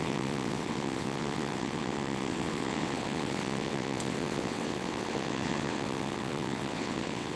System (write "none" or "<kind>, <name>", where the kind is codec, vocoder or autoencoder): vocoder, WaveNeXt